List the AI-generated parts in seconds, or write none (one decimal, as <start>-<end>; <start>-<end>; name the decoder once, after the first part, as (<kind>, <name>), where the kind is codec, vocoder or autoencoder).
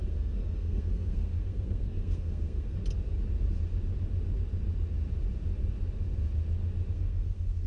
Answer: 0.0-2.8 (codec, SNAC); 6.9-7.7